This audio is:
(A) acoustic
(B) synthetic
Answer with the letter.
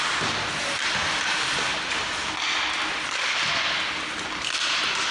A